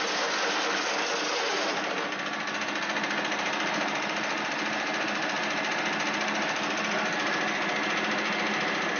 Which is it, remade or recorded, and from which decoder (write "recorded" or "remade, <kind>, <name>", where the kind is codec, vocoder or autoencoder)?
recorded